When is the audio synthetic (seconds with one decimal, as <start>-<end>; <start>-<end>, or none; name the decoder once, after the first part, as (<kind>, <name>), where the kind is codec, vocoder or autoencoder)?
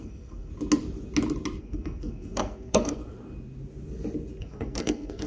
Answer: 0.0-0.5 (codec, SNAC); 1.6-3.0; 4.4-5.3